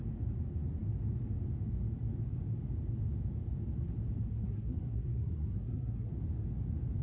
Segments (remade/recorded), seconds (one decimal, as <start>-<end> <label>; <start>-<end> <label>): 0.0-4.3 recorded; 4.3-6.1 remade; 6.1-7.0 recorded